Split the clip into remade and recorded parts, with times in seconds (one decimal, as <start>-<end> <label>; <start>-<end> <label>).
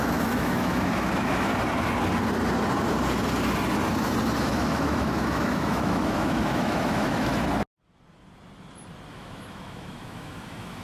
0.0-1.5 remade; 1.5-4.4 recorded; 4.4-7.3 remade; 7.3-9.1 recorded; 9.1-10.8 remade